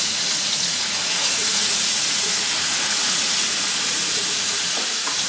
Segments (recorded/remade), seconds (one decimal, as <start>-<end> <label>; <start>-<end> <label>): 0.0-5.3 remade